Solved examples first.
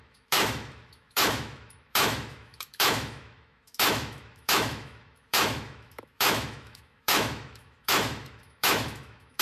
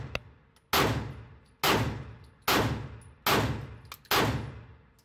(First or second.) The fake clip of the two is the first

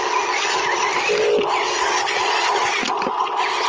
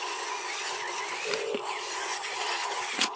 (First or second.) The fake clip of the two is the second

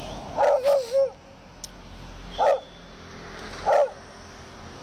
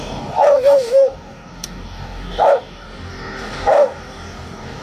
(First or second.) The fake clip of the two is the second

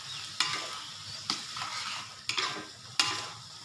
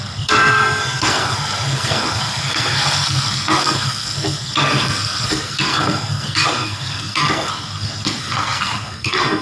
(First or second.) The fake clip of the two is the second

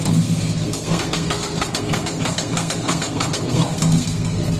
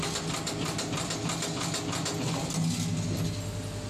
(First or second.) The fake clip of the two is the first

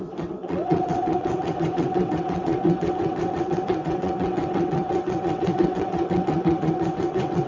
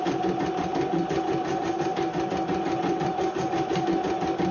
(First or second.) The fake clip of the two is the first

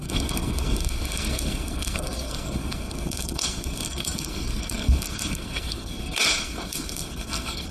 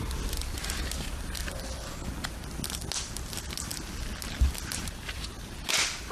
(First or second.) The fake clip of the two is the first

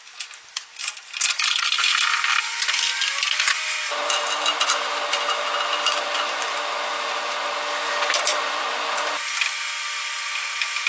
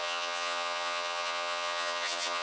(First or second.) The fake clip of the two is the second